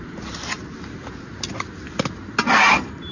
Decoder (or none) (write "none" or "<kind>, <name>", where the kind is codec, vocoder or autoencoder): none